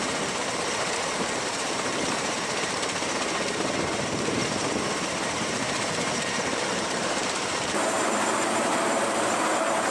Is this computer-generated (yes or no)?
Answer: yes